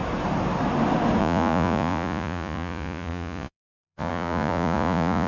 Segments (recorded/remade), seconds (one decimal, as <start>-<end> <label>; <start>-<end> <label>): 0.0-1.2 recorded; 1.2-5.3 remade